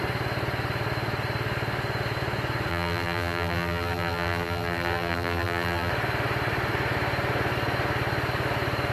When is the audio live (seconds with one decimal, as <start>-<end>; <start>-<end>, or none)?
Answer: 0.0-2.7; 5.9-8.9